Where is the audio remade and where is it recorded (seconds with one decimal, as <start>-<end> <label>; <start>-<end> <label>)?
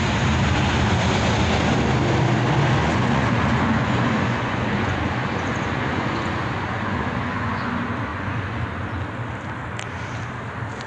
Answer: 0.0-2.8 recorded; 2.8-7.7 remade; 7.7-8.1 recorded; 8.1-8.6 remade; 8.6-10.9 recorded